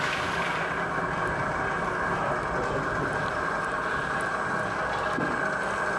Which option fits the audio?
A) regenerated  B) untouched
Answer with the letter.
B